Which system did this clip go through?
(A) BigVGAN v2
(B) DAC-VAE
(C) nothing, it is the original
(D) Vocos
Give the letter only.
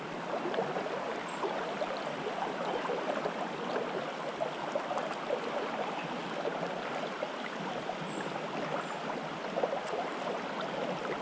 C